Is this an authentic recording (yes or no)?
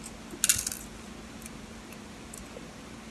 yes